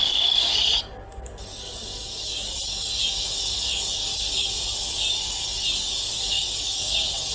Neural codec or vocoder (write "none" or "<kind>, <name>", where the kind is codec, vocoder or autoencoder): codec, DAC